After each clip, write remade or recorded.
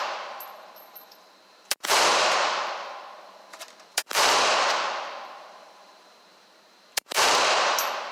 remade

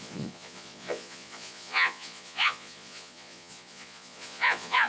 remade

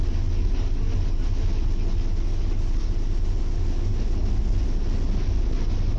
recorded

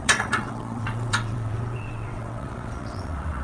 remade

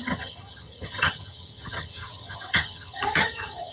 remade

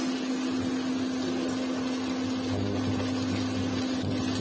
recorded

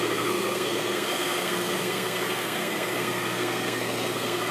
remade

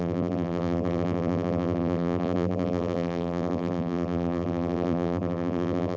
remade